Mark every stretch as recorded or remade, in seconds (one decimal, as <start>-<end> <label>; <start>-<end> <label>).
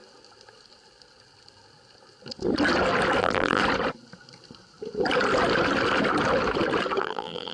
0.0-3.2 recorded; 3.2-3.6 remade; 3.6-7.0 recorded; 7.0-7.5 remade